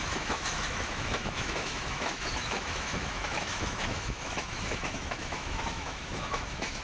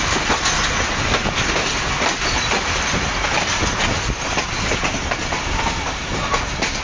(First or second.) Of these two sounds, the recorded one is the second